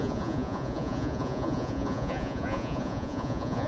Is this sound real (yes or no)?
no